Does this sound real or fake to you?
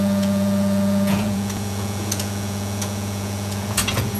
fake